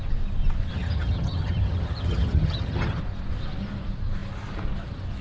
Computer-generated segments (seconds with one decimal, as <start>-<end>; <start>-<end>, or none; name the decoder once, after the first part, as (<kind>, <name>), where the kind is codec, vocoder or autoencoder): 0.7-3.0 (vocoder, HiFi-GAN)